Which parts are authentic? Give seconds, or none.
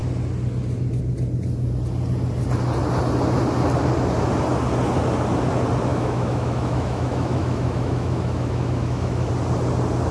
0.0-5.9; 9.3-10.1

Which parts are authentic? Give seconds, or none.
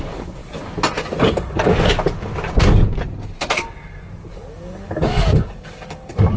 0.4-1.3; 2.3-4.3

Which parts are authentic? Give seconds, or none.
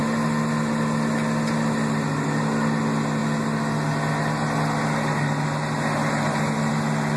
0.0-7.2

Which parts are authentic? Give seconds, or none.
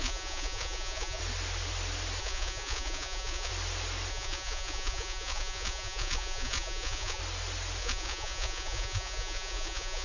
1.2-2.2; 3.5-4.1; 7.2-7.8